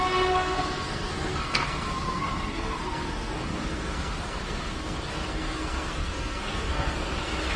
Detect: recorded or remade remade